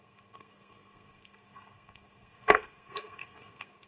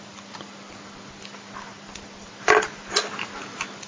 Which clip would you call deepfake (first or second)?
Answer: first